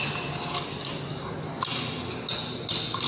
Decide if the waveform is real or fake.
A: real